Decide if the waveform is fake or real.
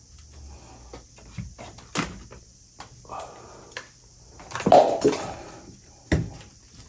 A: real